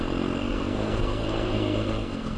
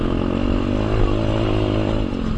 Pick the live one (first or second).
second